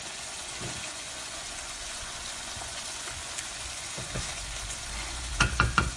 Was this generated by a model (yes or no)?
yes